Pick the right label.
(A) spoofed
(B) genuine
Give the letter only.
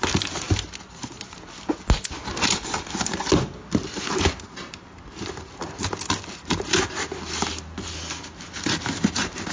B